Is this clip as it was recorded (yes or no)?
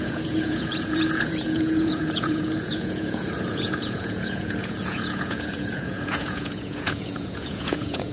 no